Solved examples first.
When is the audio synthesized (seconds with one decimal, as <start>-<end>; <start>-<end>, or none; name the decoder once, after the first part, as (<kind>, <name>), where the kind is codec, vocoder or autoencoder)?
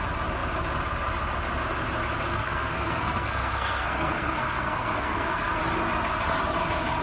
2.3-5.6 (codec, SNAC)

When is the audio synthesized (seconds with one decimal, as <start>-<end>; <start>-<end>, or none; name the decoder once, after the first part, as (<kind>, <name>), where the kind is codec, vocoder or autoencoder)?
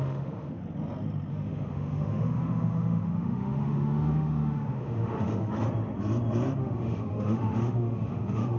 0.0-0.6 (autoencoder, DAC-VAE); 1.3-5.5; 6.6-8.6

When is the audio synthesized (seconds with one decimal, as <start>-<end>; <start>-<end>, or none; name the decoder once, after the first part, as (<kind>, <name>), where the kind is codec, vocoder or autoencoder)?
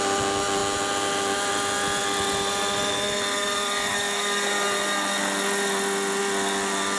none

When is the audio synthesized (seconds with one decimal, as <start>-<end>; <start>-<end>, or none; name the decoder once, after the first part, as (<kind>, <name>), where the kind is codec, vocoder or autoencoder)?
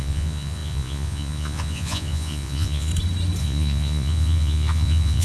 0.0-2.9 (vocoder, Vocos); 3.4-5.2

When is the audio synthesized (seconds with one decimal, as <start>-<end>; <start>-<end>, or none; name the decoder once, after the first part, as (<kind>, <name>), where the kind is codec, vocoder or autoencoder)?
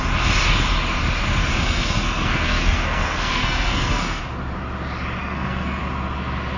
1.5-4.2 (codec, SNAC); 5.2-5.8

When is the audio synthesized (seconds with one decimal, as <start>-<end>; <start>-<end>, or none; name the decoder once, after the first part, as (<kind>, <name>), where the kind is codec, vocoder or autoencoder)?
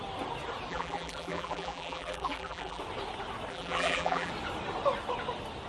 0.7-2.8 (vocoder, BigVGAN v2); 3.5-4.3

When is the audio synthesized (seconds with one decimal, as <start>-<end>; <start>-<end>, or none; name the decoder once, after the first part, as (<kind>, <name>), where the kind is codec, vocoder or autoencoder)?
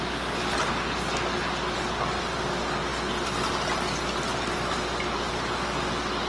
none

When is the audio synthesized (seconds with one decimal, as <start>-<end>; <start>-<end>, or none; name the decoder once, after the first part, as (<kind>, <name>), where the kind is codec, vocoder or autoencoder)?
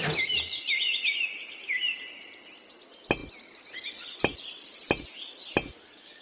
none